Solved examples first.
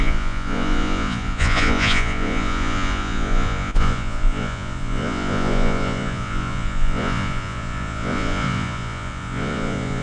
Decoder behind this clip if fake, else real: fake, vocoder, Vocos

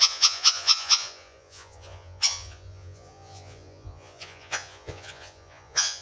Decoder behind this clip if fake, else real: fake, vocoder, Vocos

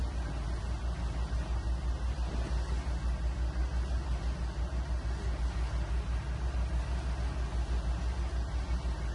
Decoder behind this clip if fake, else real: real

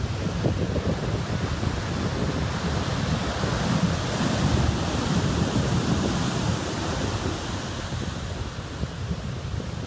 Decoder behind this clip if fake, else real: real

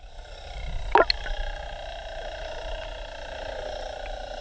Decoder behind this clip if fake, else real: real